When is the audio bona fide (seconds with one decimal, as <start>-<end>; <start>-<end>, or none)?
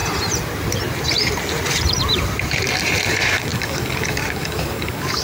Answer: 0.0-3.1